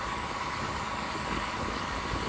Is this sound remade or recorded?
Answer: remade